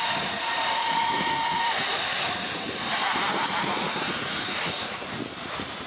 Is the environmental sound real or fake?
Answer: fake